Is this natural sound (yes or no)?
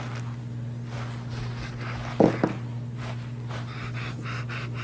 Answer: yes